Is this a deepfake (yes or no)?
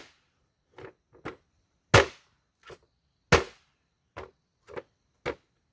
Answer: no